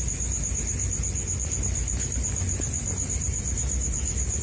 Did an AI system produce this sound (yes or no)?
no